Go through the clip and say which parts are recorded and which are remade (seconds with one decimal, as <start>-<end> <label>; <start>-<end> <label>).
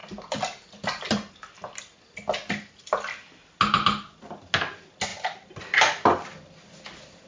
0.0-7.3 recorded